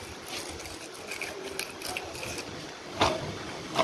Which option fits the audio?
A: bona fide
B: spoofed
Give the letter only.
A